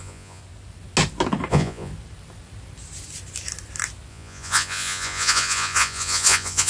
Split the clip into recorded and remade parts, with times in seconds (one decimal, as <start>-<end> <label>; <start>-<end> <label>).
0.0-0.4 remade; 0.4-1.5 recorded; 1.5-1.9 remade; 1.9-4.1 recorded; 4.1-6.7 remade